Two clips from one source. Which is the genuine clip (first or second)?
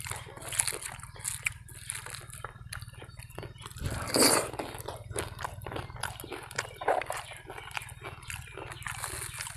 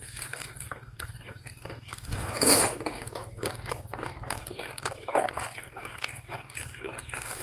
first